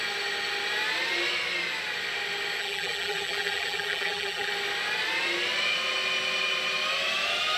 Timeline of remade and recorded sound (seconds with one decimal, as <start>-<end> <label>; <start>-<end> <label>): 0.0-2.6 recorded; 2.6-4.5 remade; 4.5-7.6 recorded